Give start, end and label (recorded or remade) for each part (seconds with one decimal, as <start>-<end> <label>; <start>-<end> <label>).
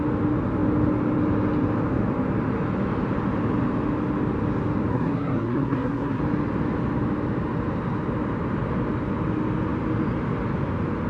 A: 0.0-4.9 recorded; 4.9-6.2 remade; 6.2-11.1 recorded